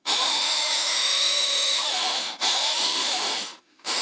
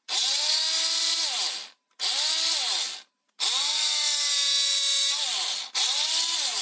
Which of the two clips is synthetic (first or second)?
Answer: first